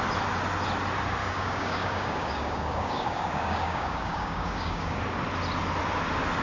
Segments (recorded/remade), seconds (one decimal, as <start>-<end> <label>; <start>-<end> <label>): 0.0-1.2 recorded; 1.2-5.0 remade; 5.0-6.4 recorded